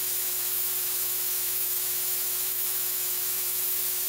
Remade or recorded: remade